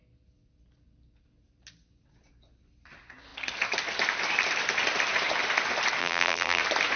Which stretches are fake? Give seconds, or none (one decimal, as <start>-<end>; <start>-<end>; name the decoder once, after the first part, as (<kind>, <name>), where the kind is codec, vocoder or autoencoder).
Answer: 6.0-6.6 (vocoder, BigVGAN v2)